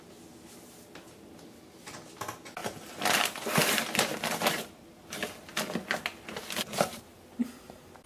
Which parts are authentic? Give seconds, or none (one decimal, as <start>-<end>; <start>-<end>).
0.0-8.1